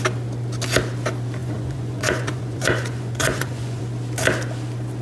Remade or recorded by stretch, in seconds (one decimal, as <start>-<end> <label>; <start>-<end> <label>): 0.0-1.4 recorded; 1.4-3.8 remade; 3.8-5.0 recorded